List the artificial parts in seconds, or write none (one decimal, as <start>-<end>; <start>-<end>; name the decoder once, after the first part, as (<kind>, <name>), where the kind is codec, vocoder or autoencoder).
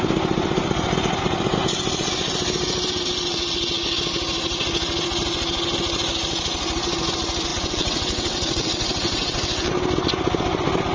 7.5-9.7 (vocoder, WaveNeXt)